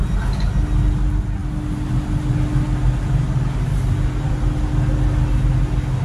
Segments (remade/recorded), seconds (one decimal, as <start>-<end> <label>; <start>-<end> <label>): 0.0-6.0 recorded